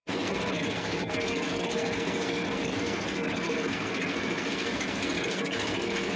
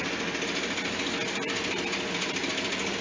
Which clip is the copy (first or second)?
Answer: first